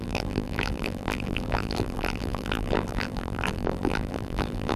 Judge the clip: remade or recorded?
remade